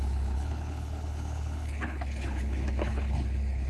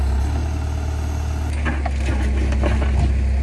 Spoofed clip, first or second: first